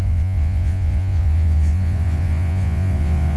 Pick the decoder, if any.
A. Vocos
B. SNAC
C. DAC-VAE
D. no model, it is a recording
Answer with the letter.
A